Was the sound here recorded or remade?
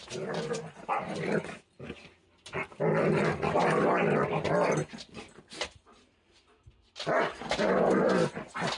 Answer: recorded